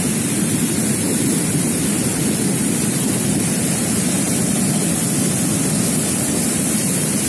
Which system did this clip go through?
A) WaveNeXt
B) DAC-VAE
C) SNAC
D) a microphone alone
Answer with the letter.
D